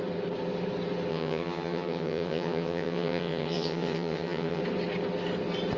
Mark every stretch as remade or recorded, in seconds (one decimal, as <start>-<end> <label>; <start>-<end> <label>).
0.0-1.1 recorded; 1.1-4.6 remade; 4.6-5.8 recorded